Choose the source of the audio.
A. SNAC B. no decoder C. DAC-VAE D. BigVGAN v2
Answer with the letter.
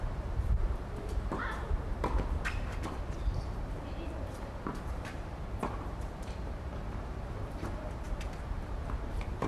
D